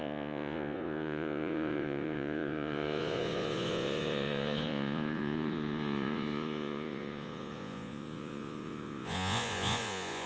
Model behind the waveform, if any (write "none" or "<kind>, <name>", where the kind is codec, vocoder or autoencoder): vocoder, Vocos